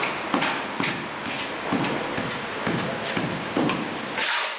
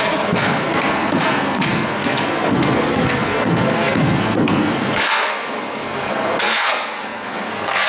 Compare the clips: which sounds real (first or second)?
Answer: first